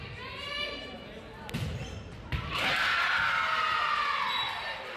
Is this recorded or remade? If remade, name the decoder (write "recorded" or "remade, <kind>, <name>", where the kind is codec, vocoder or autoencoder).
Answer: recorded